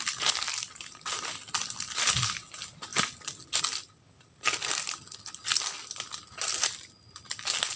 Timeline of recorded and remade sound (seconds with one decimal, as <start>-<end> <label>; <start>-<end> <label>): 0.0-7.8 recorded